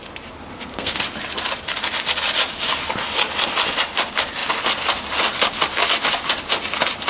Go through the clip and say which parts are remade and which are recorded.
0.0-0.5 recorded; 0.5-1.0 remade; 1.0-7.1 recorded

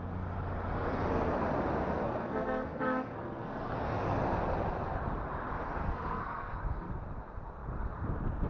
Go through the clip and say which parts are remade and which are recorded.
0.0-1.8 recorded; 1.8-3.7 remade; 3.7-5.8 recorded; 5.8-6.9 remade; 6.9-8.5 recorded

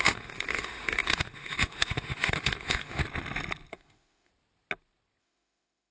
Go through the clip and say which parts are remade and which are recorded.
0.0-3.0 remade; 3.0-3.7 recorded; 3.7-4.3 remade; 4.3-5.2 recorded; 5.2-5.9 remade

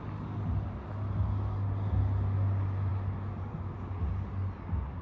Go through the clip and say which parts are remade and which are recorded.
0.0-5.0 recorded

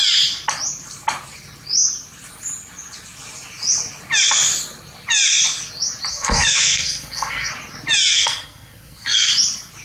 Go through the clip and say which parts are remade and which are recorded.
0.0-6.1 recorded; 6.1-7.5 remade; 7.5-8.1 recorded; 8.1-9.3 remade; 9.3-9.8 recorded

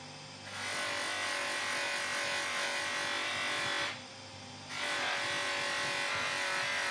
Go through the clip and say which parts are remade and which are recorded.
0.0-6.9 recorded